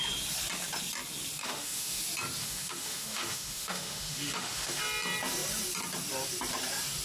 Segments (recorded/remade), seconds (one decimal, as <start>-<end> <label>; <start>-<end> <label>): 0.0-1.4 recorded; 1.4-2.0 remade; 2.0-2.4 recorded; 2.4-4.8 remade; 4.8-7.0 recorded